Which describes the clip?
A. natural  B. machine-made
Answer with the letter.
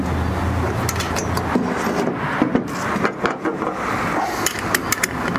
A